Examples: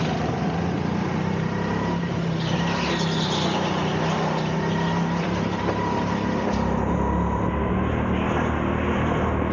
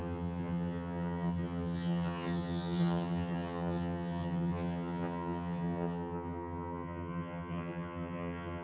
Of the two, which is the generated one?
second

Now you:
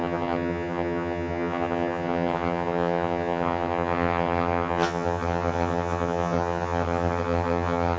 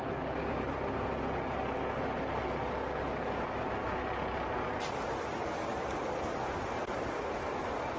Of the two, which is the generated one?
first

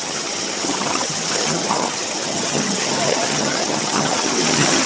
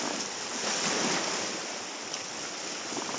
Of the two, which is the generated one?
first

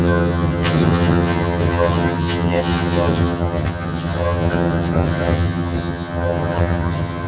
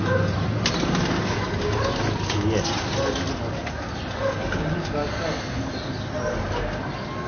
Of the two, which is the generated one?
first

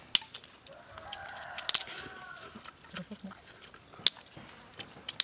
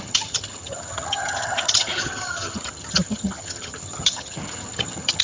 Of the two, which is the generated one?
second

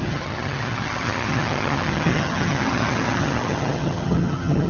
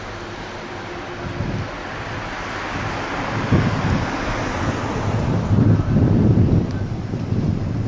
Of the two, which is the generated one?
first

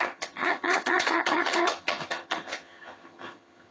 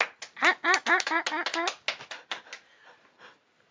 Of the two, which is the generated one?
first